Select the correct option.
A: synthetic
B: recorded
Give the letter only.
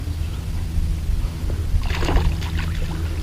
B